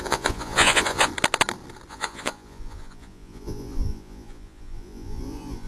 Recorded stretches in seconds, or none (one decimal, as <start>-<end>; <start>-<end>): 1.1-1.9

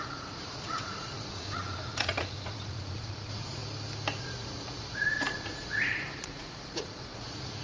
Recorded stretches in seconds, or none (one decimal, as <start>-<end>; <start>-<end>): 3.6-4.2